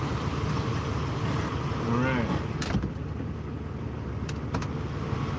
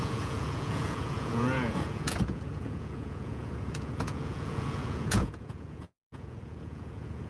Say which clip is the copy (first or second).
second